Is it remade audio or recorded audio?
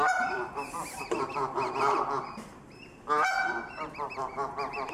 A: remade